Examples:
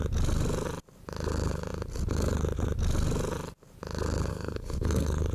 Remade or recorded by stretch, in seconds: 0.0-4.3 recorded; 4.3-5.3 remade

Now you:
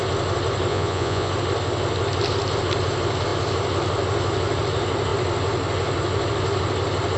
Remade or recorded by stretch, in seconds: 0.0-0.7 recorded; 0.7-1.3 remade; 1.3-7.2 recorded

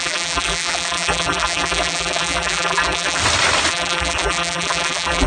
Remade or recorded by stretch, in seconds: 0.0-3.2 remade; 3.2-3.7 recorded; 3.7-5.3 remade

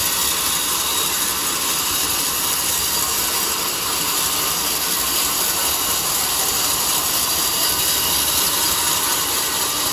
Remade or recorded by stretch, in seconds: 0.0-0.9 remade; 0.9-1.6 recorded; 1.6-9.9 remade

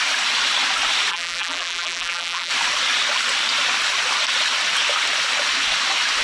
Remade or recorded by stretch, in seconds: 0.0-1.1 recorded; 1.1-2.5 remade; 2.5-6.2 recorded

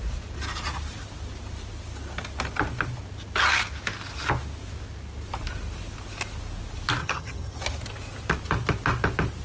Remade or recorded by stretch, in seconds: 0.0-7.0 recorded; 7.0-7.6 remade; 7.6-9.4 recorded